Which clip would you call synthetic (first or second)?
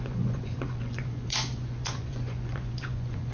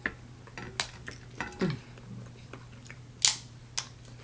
first